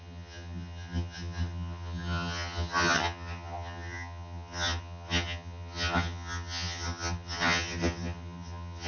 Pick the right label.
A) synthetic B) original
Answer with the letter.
A